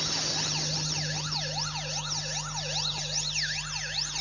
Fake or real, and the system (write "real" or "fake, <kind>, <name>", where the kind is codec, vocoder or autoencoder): real